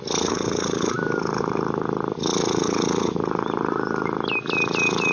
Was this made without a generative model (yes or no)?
yes